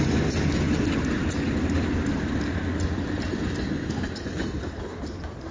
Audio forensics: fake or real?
fake